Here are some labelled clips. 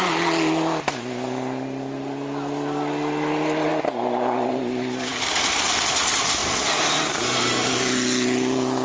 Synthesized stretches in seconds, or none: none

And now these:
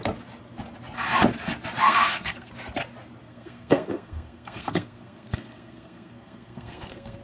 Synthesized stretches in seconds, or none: 1.8-2.5 (codec, SNAC); 3.2-7.2